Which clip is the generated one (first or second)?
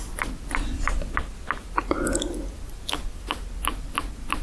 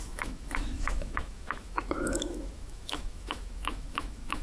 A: second